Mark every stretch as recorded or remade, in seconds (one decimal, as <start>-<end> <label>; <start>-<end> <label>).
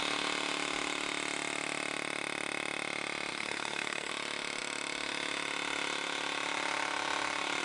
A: 0.0-3.3 recorded; 3.3-4.1 remade; 4.1-7.6 recorded